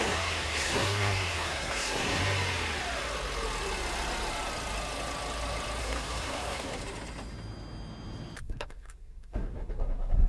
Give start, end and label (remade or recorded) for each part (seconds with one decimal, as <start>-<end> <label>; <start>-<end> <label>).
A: 0.0-2.2 remade; 2.2-5.8 recorded; 5.8-6.8 remade; 6.8-8.4 recorded; 8.4-10.3 remade